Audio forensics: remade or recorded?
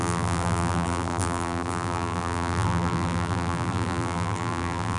remade